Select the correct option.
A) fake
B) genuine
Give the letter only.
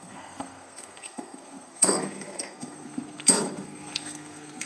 A